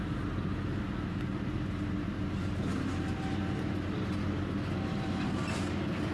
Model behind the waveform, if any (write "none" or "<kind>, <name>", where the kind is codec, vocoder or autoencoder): none